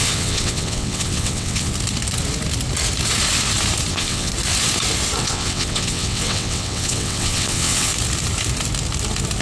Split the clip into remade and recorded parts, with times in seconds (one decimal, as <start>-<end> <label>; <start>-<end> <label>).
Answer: 0.0-1.7 remade; 1.7-3.9 recorded; 3.9-4.3 remade; 4.3-5.2 recorded; 5.2-7.9 remade; 7.9-9.4 recorded